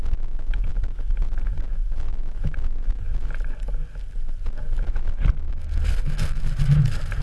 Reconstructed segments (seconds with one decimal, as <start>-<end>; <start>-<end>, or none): 5.5-6.4